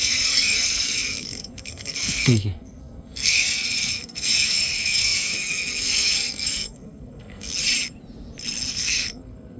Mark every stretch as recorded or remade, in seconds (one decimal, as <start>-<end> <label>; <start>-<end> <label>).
0.0-7.5 remade; 7.5-8.7 recorded; 8.7-9.6 remade